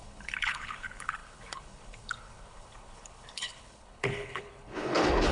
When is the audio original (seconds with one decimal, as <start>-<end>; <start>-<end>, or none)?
none